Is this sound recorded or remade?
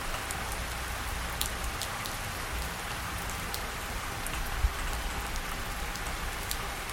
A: recorded